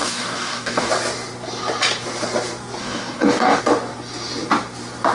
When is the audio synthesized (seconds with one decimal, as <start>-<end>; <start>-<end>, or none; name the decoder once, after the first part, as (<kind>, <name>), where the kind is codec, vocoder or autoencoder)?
0.0-0.9 (codec, DAC); 2.8-3.6